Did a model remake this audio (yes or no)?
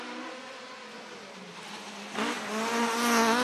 no